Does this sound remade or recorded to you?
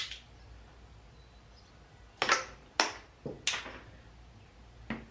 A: recorded